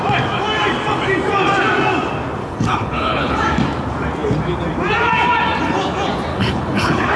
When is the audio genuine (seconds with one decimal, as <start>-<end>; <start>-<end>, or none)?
0.0-2.4; 3.4-6.3